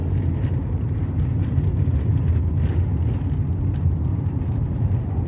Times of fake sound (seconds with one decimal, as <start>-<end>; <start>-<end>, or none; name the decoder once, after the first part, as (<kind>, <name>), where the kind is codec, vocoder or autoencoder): 0.0-2.4 (vocoder, BigVGAN v2); 4.1-5.3